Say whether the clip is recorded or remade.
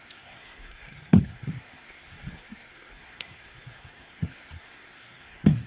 remade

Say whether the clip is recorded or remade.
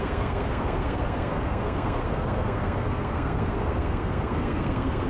remade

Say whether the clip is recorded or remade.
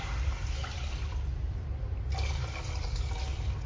recorded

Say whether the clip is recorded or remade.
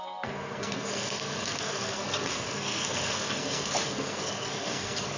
remade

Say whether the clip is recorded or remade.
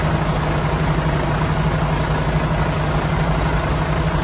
recorded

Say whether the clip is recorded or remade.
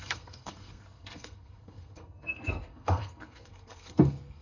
remade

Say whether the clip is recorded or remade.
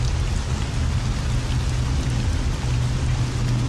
recorded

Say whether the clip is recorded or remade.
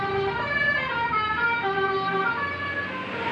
recorded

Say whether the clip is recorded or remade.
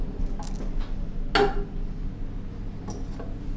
recorded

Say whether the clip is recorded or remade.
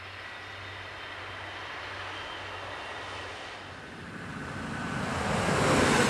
recorded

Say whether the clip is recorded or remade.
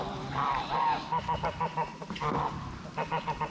recorded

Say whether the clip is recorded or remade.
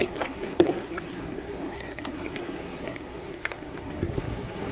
remade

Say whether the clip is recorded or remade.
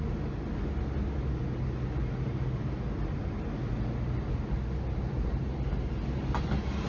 recorded